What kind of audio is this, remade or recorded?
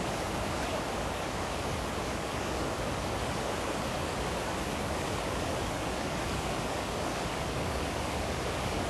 remade